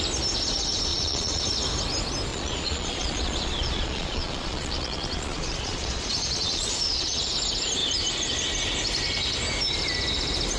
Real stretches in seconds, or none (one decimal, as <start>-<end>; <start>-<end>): 0.0-0.9; 1.4-2.3; 7.3-10.6